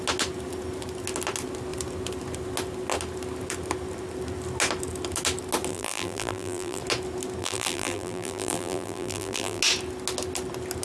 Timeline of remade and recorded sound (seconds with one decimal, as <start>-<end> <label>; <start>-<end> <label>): 0.0-5.7 recorded; 5.7-6.8 remade; 6.8-7.4 recorded; 7.4-9.6 remade; 9.6-10.8 recorded